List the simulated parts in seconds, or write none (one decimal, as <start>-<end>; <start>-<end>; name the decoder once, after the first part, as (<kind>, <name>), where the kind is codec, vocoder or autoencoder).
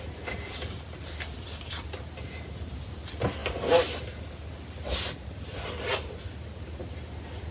none